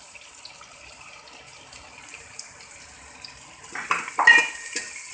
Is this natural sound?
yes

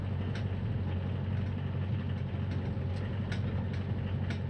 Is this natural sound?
yes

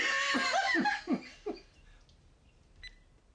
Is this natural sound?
yes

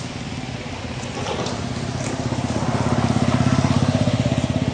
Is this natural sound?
yes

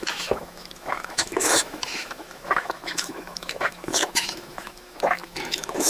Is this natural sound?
no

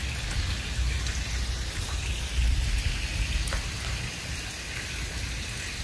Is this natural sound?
yes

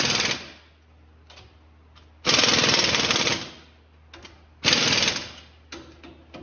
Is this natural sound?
yes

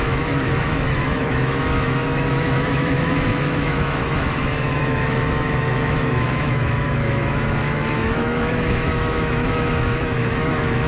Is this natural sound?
no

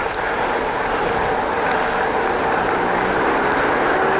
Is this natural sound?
yes